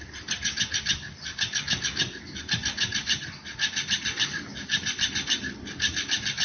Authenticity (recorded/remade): recorded